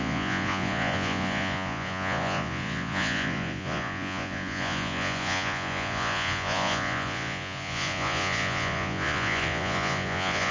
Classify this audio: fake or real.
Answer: fake